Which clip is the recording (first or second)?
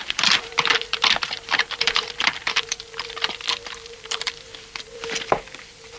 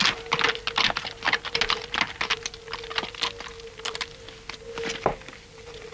second